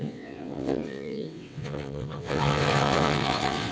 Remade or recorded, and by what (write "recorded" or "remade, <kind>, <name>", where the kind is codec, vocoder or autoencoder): remade, vocoder, WaveNeXt